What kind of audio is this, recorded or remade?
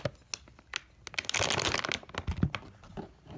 recorded